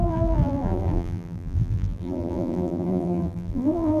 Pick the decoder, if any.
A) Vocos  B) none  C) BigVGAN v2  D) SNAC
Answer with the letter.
C